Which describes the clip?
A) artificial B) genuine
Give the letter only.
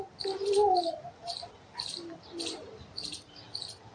B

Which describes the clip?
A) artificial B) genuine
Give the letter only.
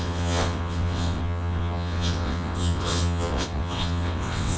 A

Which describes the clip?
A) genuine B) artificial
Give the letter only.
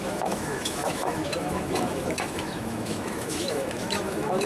B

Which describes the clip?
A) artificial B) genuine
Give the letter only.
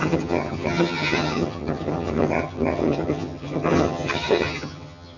A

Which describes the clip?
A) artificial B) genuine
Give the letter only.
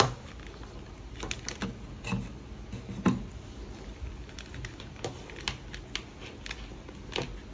B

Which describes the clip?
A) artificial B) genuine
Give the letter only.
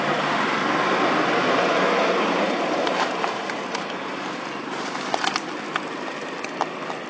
B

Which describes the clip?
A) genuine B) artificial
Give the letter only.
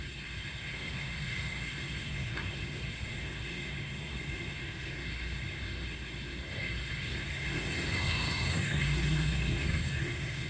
B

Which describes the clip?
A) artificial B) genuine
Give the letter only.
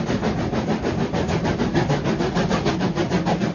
B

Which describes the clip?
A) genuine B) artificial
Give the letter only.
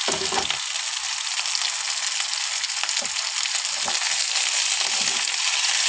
A